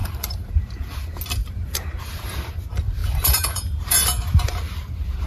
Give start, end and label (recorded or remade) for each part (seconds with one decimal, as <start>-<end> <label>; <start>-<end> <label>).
0.0-0.5 remade; 0.5-1.4 recorded; 1.4-2.6 remade; 2.6-3.0 recorded; 3.0-4.5 remade; 4.5-5.3 recorded